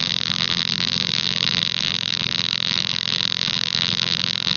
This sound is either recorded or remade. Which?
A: remade